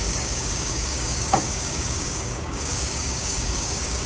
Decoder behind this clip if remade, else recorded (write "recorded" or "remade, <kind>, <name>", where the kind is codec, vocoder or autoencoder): remade, codec, DAC